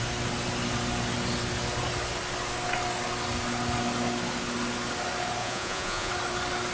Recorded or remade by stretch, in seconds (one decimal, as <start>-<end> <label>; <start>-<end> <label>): 0.0-5.4 recorded; 5.4-6.1 remade; 6.1-6.7 recorded